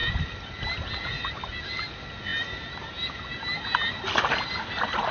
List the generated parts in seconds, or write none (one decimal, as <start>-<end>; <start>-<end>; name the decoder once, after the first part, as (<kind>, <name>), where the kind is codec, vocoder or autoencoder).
none